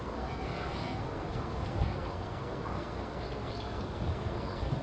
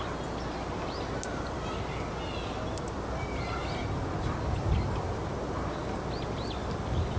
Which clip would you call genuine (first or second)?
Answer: second